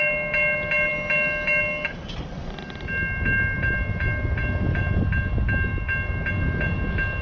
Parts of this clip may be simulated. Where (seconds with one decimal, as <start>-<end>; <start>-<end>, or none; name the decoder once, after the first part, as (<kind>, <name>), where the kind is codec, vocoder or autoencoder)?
none